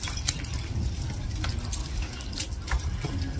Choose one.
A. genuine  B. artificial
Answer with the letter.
A